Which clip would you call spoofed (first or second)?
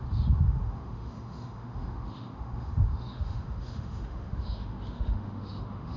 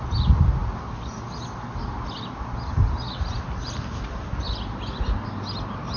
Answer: first